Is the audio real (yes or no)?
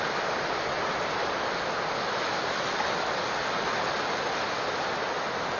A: yes